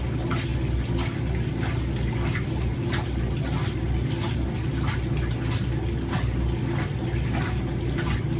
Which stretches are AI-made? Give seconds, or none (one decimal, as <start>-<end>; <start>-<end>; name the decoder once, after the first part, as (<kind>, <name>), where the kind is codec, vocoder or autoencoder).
none